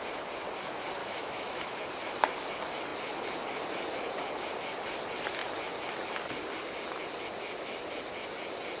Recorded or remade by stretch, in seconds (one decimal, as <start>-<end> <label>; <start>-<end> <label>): 0.0-1.0 recorded; 1.0-1.8 remade; 1.8-8.8 recorded